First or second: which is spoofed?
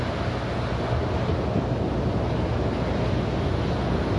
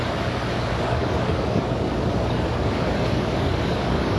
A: second